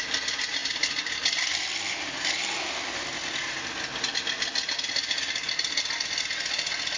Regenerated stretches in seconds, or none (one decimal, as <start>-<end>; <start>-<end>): 0.6-2.1